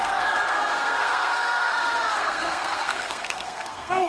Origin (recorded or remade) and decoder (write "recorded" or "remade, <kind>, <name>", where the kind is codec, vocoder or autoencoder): remade, codec, SNAC